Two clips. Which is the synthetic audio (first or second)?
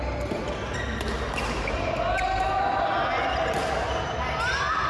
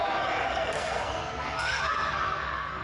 second